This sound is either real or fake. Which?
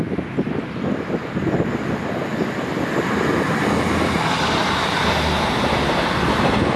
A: real